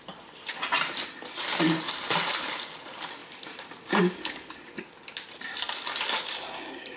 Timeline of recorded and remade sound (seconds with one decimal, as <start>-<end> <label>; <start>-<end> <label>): 0.0-7.0 recorded